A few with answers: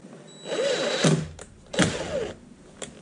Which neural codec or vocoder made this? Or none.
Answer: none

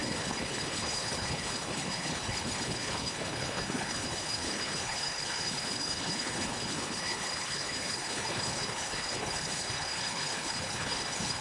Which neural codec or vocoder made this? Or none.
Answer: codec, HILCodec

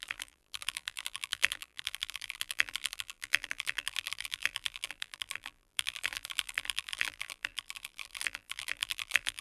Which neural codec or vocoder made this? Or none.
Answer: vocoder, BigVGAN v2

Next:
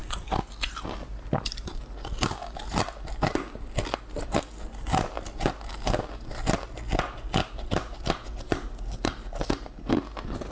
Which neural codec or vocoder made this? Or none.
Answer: none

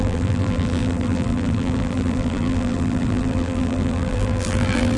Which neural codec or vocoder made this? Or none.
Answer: vocoder, BigVGAN v2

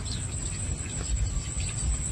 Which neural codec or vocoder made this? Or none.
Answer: none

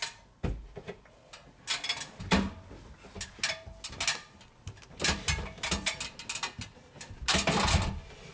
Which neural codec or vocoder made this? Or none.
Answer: none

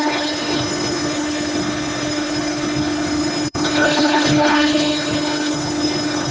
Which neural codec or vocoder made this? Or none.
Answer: codec, HILCodec